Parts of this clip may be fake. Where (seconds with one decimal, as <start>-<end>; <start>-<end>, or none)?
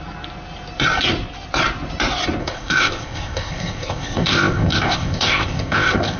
2.4-6.2